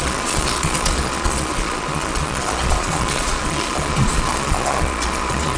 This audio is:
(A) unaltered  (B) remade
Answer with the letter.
B